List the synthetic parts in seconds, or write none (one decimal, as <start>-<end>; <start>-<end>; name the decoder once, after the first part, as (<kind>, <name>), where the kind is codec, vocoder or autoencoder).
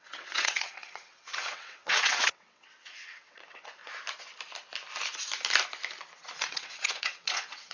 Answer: 0.0-3.8 (vocoder, WaveNeXt); 6.4-7.7